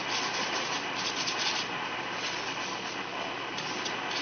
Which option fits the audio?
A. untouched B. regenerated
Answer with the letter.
A